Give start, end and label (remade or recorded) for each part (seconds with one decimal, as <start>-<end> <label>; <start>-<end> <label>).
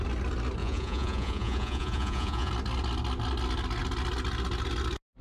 0.0-0.6 recorded; 0.6-2.5 remade; 2.5-5.2 recorded